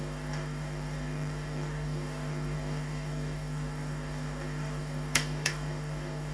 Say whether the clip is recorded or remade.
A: remade